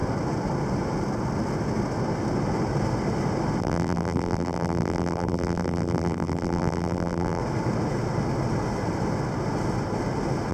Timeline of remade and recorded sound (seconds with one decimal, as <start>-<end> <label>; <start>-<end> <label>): 0.0-3.6 recorded; 3.6-7.4 remade; 7.4-10.5 recorded

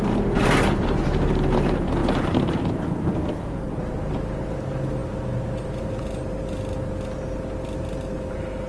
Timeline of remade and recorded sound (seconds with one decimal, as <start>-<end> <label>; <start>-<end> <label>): 0.0-8.7 recorded

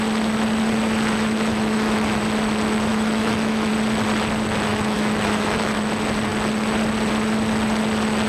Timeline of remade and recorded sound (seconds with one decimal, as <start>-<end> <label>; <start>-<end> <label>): 0.0-1.5 recorded; 1.5-2.2 remade; 2.2-2.9 recorded; 2.9-3.7 remade; 3.7-4.7 recorded; 4.7-5.7 remade; 5.7-8.3 recorded

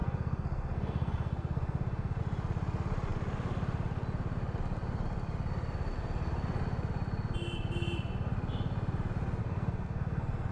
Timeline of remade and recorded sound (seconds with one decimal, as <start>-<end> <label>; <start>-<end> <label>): 0.0-2.2 remade; 2.2-9.4 recorded; 9.4-10.5 remade

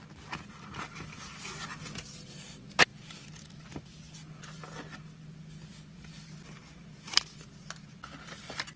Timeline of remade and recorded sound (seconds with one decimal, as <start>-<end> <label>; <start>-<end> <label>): 0.0-8.8 recorded